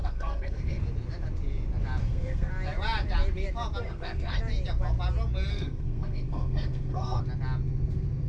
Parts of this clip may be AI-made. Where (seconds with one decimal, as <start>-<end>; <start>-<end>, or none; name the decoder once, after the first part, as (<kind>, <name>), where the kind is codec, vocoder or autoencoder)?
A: 0.0-0.8 (codec, SNAC); 2.0-2.5; 3.8-4.4; 5.5-7.2